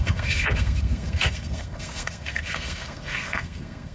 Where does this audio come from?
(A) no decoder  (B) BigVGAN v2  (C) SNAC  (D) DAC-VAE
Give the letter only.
C